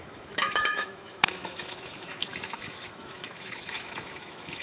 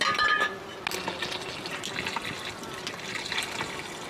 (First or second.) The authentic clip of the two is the second